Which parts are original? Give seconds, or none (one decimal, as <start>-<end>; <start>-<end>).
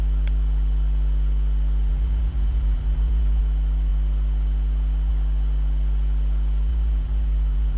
0.0-1.9; 3.4-6.7